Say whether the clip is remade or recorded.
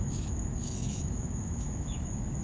remade